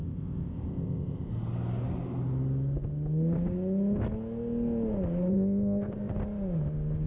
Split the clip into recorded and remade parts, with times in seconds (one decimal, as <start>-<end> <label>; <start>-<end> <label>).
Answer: 0.0-1.3 remade; 1.3-5.3 recorded; 5.3-6.1 remade; 6.1-7.1 recorded